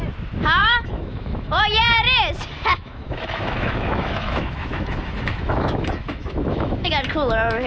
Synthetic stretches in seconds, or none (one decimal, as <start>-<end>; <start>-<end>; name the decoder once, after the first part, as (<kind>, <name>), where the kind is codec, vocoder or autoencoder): 0.6-1.6 (autoencoder, DAC-VAE); 2.7-6.9